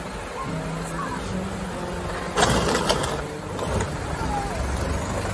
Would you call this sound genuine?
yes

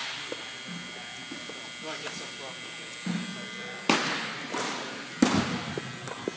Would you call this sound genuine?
yes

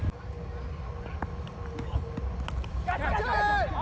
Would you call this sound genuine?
yes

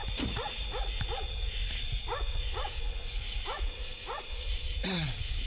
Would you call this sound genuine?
no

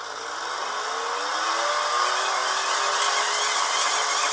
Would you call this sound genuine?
yes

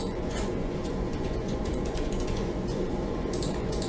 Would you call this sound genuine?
no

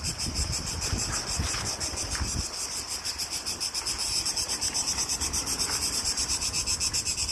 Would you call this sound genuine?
yes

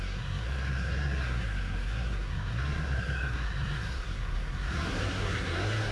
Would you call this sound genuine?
no